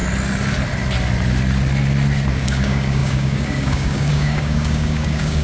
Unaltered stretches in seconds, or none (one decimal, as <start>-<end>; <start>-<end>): 0.0-2.3